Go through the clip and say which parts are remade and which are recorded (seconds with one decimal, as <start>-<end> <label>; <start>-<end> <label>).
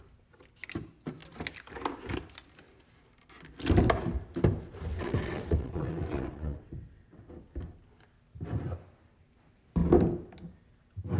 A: 0.0-4.9 recorded; 4.9-7.3 remade; 7.3-11.2 recorded